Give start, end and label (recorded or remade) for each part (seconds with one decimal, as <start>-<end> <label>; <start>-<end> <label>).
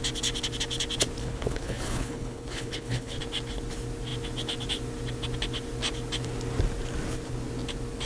0.0-1.2 recorded; 1.2-3.2 remade; 3.2-8.1 recorded